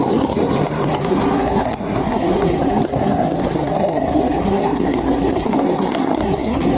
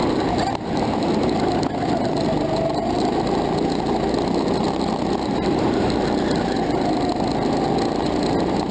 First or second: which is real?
second